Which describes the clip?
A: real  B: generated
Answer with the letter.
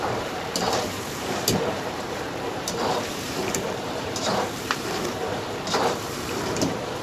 B